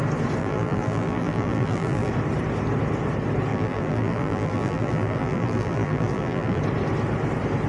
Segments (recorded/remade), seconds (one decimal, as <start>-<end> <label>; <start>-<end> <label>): 0.0-0.4 recorded; 0.4-2.1 remade; 2.1-3.5 recorded; 3.5-6.6 remade; 6.6-7.7 recorded